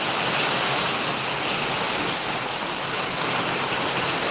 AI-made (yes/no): no